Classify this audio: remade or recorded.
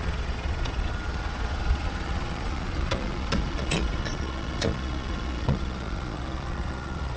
remade